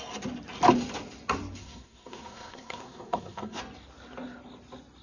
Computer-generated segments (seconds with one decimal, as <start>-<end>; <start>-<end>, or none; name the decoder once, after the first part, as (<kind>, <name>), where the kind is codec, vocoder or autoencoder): 1.6-3.6 (codec, SNAC)